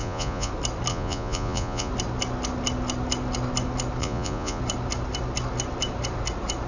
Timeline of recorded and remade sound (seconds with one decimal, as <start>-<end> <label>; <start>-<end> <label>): 0.0-0.5 remade; 0.5-0.9 recorded; 0.9-1.9 remade; 1.9-4.0 recorded; 4.0-4.6 remade; 4.6-6.7 recorded